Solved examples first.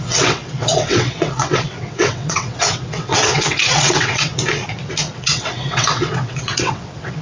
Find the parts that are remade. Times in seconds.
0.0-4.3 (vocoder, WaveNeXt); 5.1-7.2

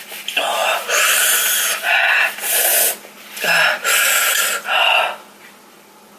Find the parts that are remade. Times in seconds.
0.6-1.5 (vocoder, BigVGAN v2)

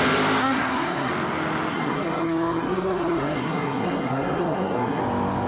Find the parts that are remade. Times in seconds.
0.4-1.1 (codec, SNAC); 1.7-5.0

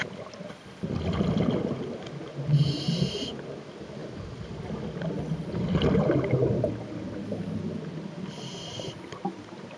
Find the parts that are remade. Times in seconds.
none

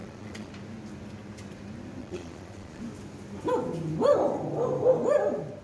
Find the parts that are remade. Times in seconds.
0.0-0.5 (vocoder, Vocos); 2.0-2.8

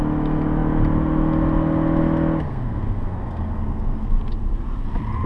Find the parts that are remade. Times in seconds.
2.5-4.2 (codec, SNAC)

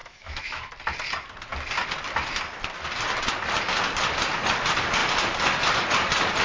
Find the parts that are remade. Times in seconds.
0.0-0.7 (autoencoder, DAC-VAE)